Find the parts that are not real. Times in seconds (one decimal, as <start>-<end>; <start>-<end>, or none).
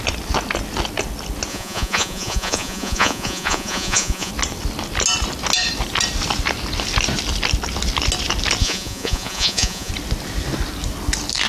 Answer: 1.5-4.3; 8.6-9.9